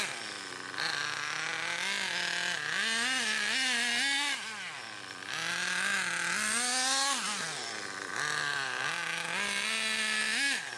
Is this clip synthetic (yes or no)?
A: no